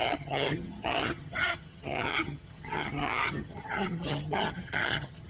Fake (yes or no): yes